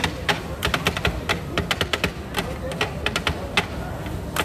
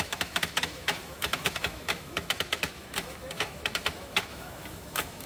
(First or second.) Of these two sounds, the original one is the first